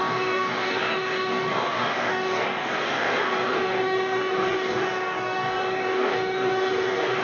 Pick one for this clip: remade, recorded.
remade